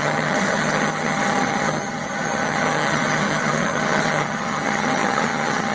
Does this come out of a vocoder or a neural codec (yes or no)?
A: yes